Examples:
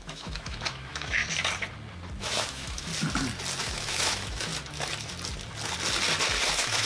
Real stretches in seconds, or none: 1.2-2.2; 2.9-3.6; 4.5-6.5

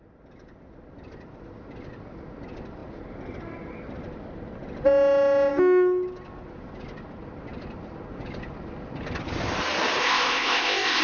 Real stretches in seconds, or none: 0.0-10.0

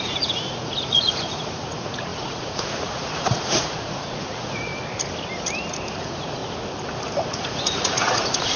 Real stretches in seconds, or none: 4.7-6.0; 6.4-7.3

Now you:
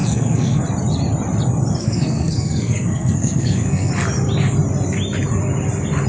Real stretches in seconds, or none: 0.6-1.8; 3.9-6.1

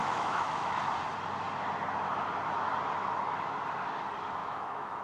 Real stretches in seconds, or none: 0.8-4.4

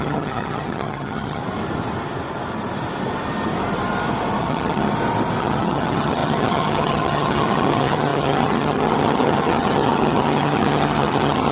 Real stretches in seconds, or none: 1.4-4.4; 4.9-5.4